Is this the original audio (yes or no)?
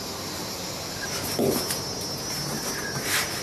yes